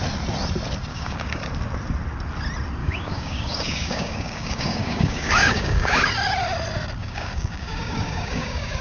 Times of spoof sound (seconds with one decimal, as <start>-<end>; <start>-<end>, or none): 0.9-1.4; 2.8-6.1; 7.0-8.8